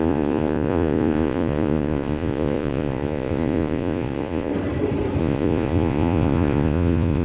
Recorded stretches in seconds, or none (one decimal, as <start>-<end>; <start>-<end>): 4.5-5.2